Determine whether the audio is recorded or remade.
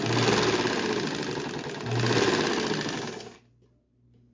recorded